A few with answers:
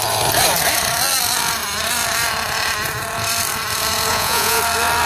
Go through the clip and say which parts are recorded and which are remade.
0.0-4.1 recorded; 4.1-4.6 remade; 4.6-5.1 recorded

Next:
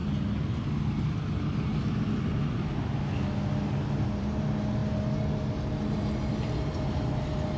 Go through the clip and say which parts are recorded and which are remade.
0.0-7.6 recorded

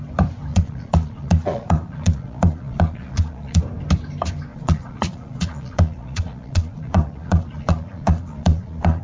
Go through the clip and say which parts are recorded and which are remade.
0.0-0.5 recorded; 0.5-3.6 remade; 3.6-4.5 recorded; 4.5-9.0 remade

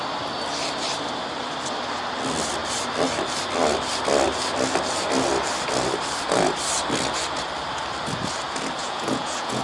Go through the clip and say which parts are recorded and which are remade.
0.0-8.8 recorded; 8.8-9.6 remade

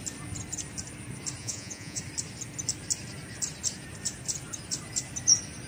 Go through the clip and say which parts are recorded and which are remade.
0.0-1.4 recorded; 1.4-2.0 remade; 2.0-5.7 recorded

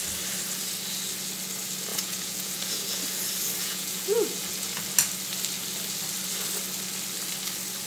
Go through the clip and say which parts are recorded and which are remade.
0.0-1.9 recorded; 1.9-3.0 remade; 3.0-3.6 recorded; 3.6-4.8 remade; 4.8-7.9 recorded